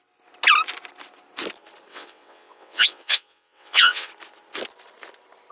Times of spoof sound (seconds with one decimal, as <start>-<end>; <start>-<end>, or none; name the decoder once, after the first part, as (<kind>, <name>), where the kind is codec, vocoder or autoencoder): 1.9-4.1 (vocoder, WaveNeXt)